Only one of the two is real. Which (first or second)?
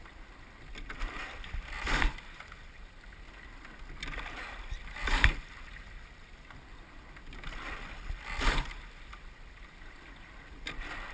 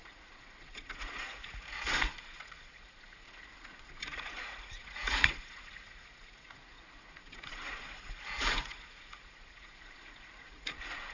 first